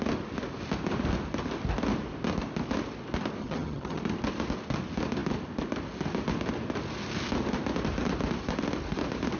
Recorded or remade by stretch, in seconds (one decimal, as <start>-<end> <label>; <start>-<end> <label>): 0.0-3.4 recorded; 3.4-4.0 remade; 4.0-9.4 recorded